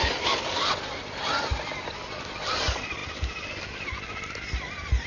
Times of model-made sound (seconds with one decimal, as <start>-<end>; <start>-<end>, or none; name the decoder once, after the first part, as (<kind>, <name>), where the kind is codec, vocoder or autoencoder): none